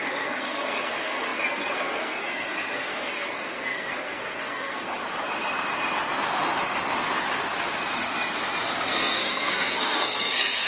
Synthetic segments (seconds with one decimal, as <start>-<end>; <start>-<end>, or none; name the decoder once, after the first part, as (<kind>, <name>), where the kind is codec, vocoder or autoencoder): 0.0-4.9 (codec, SNAC); 8.8-10.7